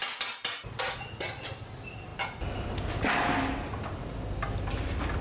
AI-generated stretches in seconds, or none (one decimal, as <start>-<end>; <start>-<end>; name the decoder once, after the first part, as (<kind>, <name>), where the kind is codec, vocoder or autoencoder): none